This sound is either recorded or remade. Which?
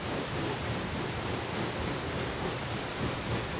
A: recorded